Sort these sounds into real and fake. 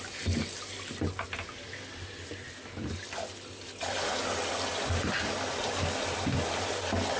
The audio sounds real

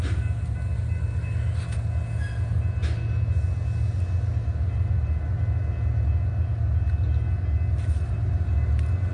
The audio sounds real